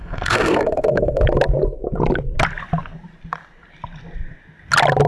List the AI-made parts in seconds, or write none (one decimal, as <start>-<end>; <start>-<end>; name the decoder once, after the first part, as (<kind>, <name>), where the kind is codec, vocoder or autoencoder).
0.0-1.2 (codec, SNAC)